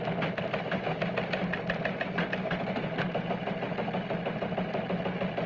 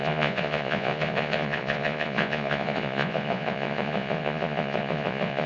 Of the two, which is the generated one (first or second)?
second